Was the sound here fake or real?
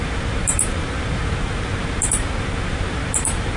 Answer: fake